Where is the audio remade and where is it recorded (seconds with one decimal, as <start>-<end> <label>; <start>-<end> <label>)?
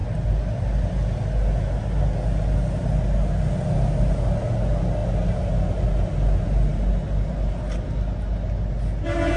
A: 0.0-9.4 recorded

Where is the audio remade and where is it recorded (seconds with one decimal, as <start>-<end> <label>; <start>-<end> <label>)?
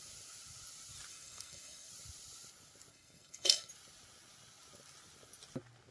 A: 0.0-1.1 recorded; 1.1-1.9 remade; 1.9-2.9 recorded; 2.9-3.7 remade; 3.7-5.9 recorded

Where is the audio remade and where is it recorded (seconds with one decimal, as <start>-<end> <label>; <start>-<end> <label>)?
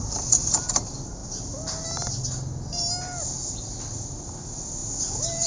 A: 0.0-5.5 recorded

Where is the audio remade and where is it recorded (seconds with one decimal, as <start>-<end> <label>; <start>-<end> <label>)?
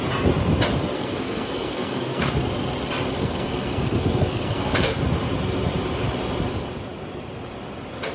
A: 0.0-0.9 recorded; 0.9-2.3 remade; 2.3-3.2 recorded; 3.2-5.0 remade; 5.0-8.1 recorded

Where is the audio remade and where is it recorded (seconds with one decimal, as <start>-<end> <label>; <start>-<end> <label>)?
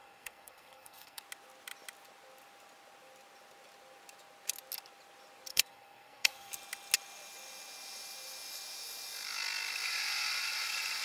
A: 0.0-1.2 remade; 1.2-5.5 recorded; 5.5-6.5 remade; 6.5-11.0 recorded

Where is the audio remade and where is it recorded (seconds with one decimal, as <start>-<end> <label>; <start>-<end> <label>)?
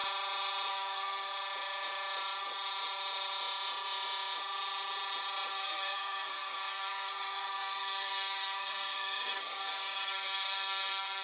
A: 0.0-0.7 recorded; 0.7-1.3 remade; 1.3-5.5 recorded; 5.5-11.2 remade